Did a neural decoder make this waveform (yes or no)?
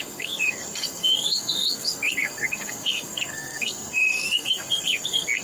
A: yes